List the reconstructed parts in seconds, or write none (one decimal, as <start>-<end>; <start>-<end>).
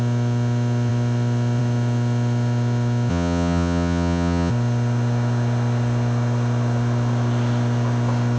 3.1-4.5